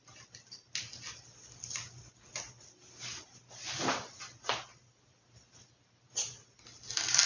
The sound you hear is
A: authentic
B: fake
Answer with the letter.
A